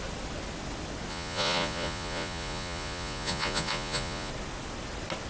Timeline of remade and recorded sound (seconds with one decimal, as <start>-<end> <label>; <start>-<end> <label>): 0.0-1.1 recorded; 1.1-4.3 remade; 4.3-5.3 recorded